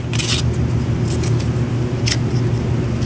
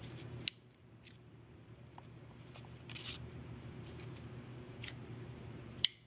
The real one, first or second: first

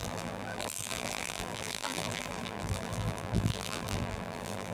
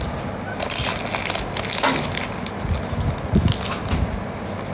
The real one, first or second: second